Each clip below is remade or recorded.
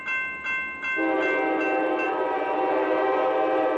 recorded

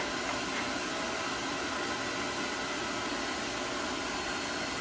recorded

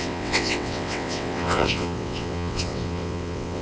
remade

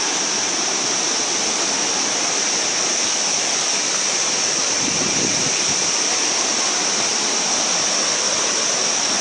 recorded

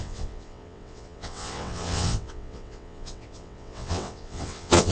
remade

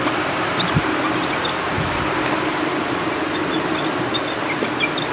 recorded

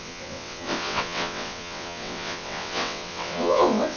remade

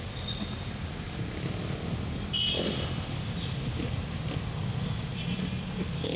recorded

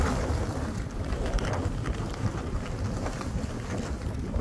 recorded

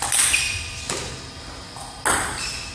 recorded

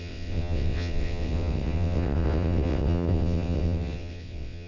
remade